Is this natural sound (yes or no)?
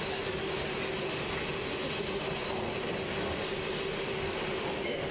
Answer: yes